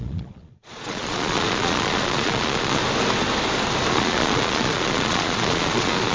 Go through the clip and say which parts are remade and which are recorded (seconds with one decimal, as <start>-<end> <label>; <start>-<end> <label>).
0.0-2.8 remade; 2.8-3.9 recorded; 3.9-6.1 remade